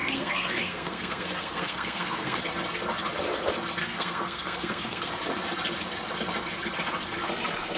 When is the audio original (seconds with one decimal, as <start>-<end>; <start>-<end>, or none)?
2.4-3.8; 5.1-7.8